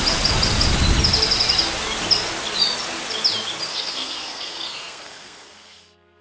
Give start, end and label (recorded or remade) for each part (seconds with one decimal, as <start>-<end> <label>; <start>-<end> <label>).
0.0-3.7 recorded; 3.7-6.2 remade